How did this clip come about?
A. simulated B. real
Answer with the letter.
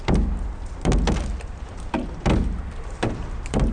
B